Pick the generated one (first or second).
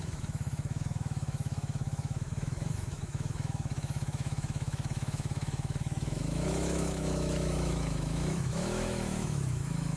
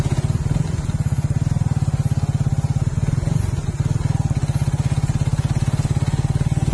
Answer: first